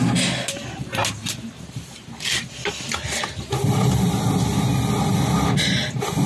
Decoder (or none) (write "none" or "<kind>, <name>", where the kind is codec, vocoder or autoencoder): none